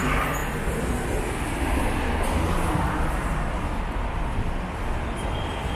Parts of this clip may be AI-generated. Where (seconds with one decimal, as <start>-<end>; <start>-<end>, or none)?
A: none